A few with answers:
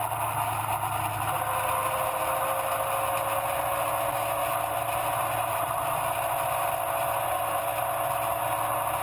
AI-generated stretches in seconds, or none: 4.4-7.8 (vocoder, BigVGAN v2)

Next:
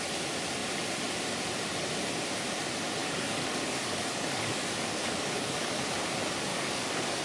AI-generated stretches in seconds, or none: 3.0-5.8 (codec, DAC); 6.5-7.2